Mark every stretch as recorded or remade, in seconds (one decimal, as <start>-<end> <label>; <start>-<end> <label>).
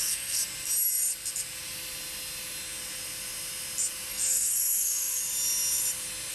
0.0-0.4 remade; 0.4-4.1 recorded; 4.1-5.2 remade; 5.2-6.3 recorded